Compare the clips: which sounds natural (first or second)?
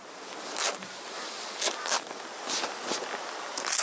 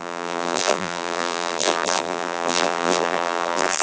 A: first